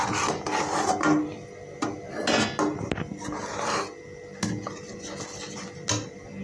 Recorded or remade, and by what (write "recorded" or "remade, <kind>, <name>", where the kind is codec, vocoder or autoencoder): recorded